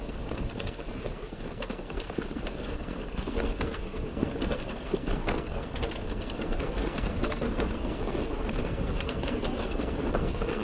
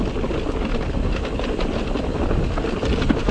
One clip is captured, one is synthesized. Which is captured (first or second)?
second